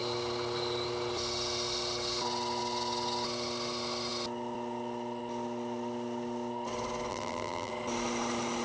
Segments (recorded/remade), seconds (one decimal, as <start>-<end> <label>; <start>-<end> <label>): 0.0-7.1 recorded; 7.1-7.7 remade; 7.7-8.6 recorded